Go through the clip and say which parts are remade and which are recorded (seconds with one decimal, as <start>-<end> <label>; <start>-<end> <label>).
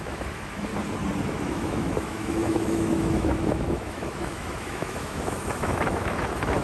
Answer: 0.0-0.7 remade; 0.7-1.3 recorded; 1.3-6.6 remade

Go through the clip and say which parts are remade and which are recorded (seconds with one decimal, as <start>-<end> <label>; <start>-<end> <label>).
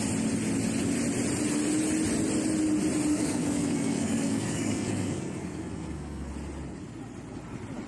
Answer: 0.0-3.1 recorded; 3.1-6.3 remade; 6.3-7.9 recorded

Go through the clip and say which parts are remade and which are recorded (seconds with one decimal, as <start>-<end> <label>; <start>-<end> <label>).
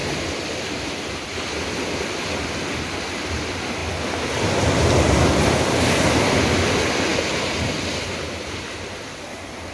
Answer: 0.0-9.7 recorded